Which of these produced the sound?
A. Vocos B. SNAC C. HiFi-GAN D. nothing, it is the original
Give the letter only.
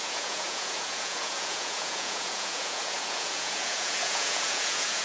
A